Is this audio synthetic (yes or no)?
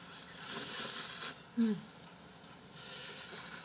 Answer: no